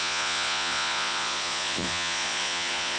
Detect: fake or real fake